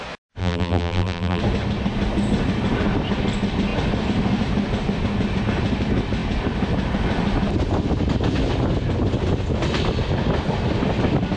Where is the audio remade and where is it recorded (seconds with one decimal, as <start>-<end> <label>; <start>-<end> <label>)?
0.0-0.4 recorded; 0.4-1.4 remade; 1.4-11.4 recorded